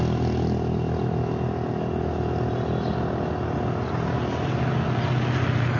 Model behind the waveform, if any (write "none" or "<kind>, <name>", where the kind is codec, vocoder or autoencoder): none